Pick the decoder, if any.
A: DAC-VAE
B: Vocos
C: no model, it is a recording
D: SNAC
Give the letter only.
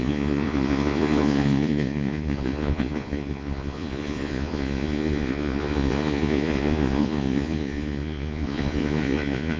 B